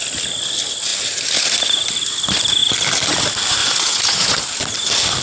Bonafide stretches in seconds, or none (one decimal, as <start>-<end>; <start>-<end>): 0.0-3.6; 4.4-5.2